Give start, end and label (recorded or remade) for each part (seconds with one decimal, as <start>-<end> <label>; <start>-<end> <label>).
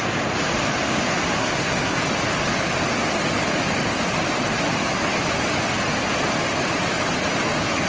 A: 0.0-1.4 recorded; 1.4-2.0 remade; 2.0-7.9 recorded